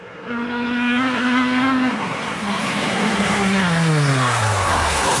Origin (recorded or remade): remade